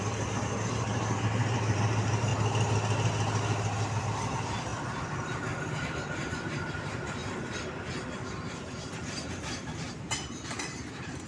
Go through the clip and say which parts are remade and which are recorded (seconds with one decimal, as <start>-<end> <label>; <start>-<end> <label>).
0.0-2.3 remade; 2.3-4.0 recorded; 4.0-4.7 remade; 4.7-6.4 recorded; 6.4-7.2 remade; 7.2-8.5 recorded; 8.5-11.3 remade